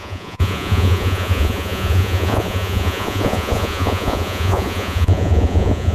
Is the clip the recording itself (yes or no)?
no